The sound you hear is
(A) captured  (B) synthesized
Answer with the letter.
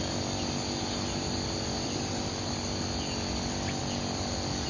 A